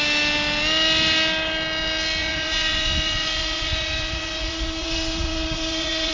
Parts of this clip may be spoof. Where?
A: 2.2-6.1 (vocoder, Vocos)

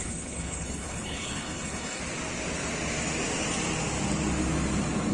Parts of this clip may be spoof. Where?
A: 0.0-2.0 (codec, HILCodec)

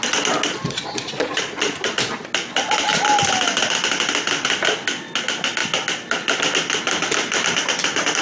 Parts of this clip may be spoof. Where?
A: 0.5-1.9 (vocoder, Vocos)

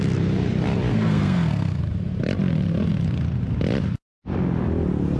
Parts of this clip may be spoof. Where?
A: 0.9-1.8 (codec, SNAC)